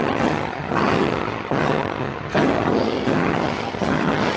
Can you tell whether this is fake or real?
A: fake